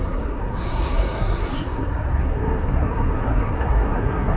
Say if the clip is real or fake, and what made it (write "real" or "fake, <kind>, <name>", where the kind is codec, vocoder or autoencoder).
fake, codec, SNAC